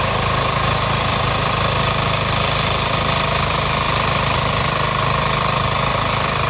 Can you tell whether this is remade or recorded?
remade